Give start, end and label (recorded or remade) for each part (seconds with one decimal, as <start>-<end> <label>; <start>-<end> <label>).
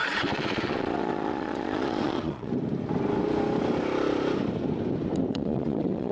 0.0-2.5 remade; 2.5-5.3 recorded; 5.3-6.1 remade